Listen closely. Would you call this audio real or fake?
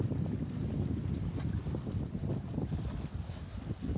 real